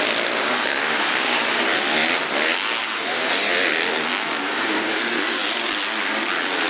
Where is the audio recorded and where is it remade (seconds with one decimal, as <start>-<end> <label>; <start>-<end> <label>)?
0.0-0.4 recorded; 0.4-1.4 remade; 1.4-4.1 recorded; 4.1-5.0 remade; 5.0-6.7 recorded